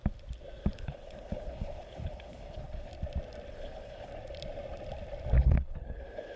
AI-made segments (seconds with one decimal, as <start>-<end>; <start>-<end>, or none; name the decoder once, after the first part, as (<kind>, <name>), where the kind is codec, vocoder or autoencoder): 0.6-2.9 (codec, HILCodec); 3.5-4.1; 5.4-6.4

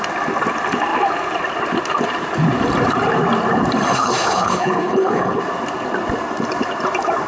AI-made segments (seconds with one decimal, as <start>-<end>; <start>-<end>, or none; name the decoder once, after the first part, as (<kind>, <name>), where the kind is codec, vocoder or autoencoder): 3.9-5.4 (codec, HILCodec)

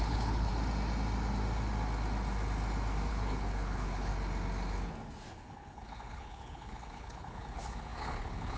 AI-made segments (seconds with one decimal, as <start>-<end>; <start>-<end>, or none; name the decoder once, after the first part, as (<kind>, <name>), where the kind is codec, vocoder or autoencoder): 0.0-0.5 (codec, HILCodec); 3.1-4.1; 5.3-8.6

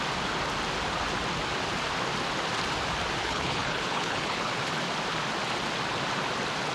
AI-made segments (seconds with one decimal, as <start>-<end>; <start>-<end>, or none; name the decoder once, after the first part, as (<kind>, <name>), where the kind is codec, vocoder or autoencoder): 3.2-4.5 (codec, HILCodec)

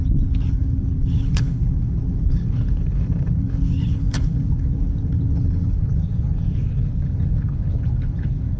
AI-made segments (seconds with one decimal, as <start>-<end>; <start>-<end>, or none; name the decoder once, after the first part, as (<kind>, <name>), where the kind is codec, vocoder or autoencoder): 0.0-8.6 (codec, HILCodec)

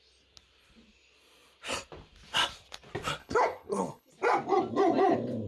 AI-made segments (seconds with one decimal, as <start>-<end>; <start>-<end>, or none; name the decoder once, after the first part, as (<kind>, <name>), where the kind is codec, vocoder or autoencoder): 3.2-4.1 (codec, HILCodec)